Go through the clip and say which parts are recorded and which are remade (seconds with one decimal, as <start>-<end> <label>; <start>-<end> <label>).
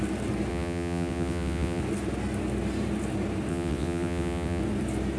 0.0-0.5 recorded; 0.5-1.8 remade; 1.8-3.5 recorded; 3.5-4.6 remade; 4.6-5.2 recorded